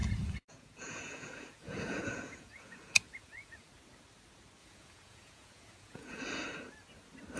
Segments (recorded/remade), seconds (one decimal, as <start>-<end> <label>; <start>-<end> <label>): 0.0-3.7 remade; 3.7-4.6 recorded; 4.6-6.2 remade; 6.2-7.4 recorded